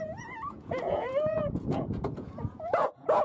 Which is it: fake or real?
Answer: fake